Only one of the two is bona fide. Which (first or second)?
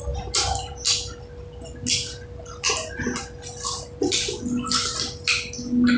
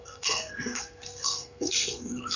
first